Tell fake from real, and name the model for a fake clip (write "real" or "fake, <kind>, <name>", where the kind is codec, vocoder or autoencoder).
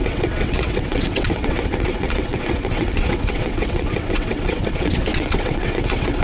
fake, vocoder, WaveNeXt